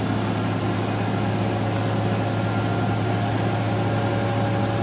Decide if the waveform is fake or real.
real